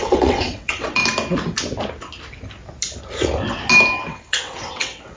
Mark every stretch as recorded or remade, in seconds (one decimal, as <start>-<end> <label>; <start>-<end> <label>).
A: 0.0-1.0 remade; 1.0-4.1 recorded; 4.1-5.2 remade